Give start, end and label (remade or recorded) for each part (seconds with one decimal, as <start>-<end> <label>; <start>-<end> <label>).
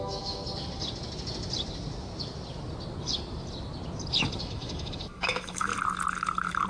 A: 0.0-0.4 remade; 0.4-4.4 recorded; 4.4-5.7 remade; 5.7-6.7 recorded